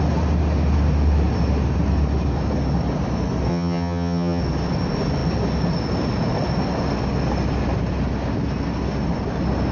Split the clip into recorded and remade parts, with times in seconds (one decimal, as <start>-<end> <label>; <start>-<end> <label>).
0.0-3.5 recorded; 3.5-4.4 remade; 4.4-9.7 recorded